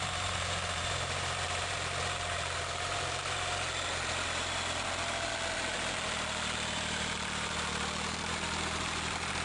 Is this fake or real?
fake